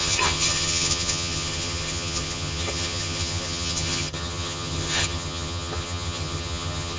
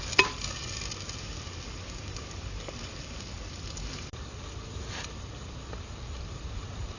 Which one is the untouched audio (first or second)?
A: second